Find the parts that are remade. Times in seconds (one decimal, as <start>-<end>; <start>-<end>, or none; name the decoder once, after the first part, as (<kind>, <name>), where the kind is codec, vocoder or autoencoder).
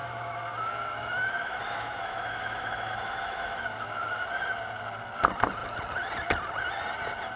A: 0.0-4.3 (autoencoder, DAC-VAE)